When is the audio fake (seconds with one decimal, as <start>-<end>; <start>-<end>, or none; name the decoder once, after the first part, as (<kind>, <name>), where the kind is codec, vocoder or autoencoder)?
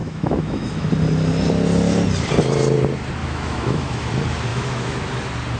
0.0-0.9 (autoencoder, DAC-VAE); 3.2-4.0; 4.5-5.1